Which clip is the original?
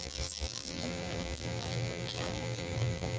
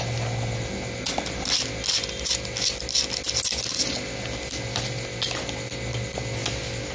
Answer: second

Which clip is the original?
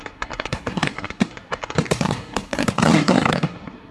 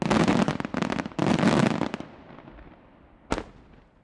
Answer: second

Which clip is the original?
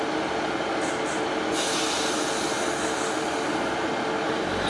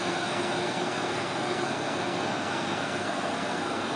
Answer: first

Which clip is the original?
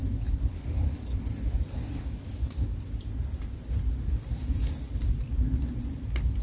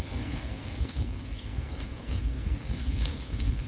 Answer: first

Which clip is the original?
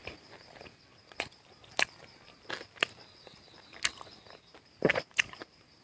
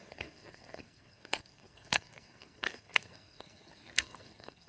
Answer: first